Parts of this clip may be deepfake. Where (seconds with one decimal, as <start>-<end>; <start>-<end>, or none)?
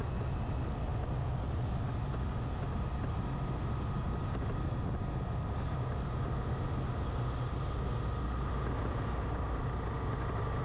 none